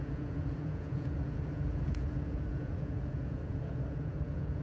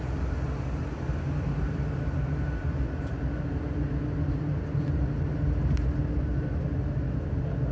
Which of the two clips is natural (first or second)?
second